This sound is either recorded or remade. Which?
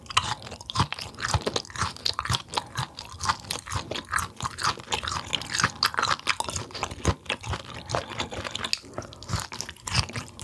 recorded